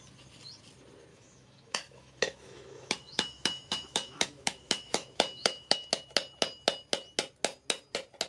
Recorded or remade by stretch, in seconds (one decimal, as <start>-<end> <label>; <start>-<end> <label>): 0.0-1.1 recorded; 1.1-5.9 remade; 5.9-8.3 recorded